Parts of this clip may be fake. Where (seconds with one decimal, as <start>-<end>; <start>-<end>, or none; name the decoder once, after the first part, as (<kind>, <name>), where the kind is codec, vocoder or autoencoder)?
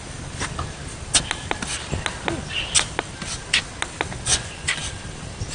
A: 4.3-4.8 (vocoder, Vocos)